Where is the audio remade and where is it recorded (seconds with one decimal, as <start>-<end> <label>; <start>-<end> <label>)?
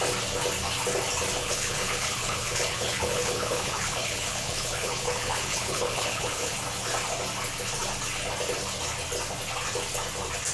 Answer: 0.0-1.4 recorded; 1.4-6.5 remade; 6.5-10.5 recorded